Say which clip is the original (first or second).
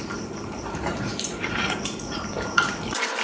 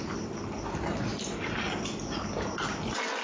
second